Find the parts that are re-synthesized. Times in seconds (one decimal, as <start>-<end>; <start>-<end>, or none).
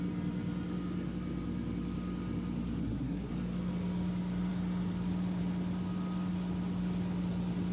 2.8-3.3